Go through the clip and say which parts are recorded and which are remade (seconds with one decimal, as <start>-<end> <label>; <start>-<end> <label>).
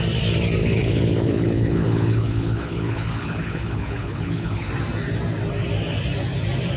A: 0.0-0.6 recorded; 0.6-4.7 remade; 4.7-6.8 recorded